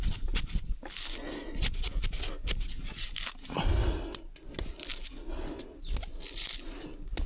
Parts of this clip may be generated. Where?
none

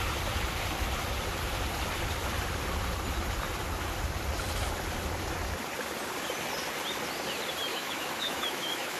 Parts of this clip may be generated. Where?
7.7-9.0 (autoencoder, DAC-VAE)

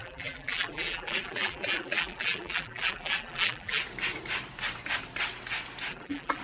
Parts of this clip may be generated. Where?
0.0-3.8 (vocoder, BigVGAN v2); 5.9-6.4

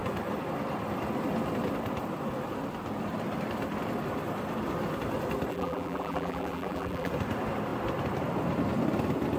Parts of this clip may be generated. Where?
5.5-7.1 (vocoder, BigVGAN v2)